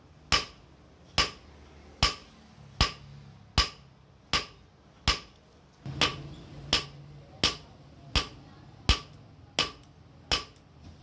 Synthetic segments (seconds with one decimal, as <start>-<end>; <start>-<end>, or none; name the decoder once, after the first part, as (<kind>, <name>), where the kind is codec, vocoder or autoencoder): none